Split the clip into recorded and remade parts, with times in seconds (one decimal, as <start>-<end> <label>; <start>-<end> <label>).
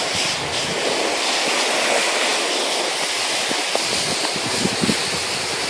0.0-5.7 recorded